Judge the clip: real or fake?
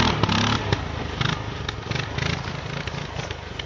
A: real